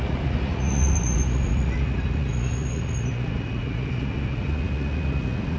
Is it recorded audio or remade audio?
remade